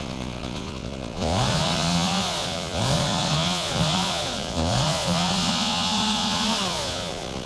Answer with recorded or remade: remade